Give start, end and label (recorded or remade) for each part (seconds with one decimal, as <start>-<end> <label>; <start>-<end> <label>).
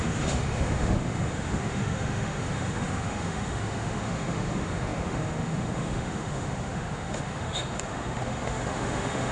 0.0-9.3 remade